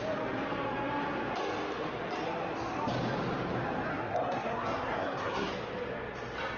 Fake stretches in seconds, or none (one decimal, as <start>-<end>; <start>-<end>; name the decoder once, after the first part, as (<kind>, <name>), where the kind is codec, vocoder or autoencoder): 3.9-5.5 (codec, SNAC)